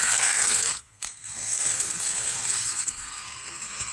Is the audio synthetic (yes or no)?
yes